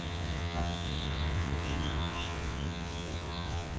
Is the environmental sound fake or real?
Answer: fake